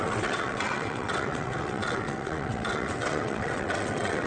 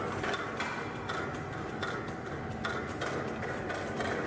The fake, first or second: first